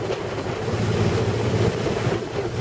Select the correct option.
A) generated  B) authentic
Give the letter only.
A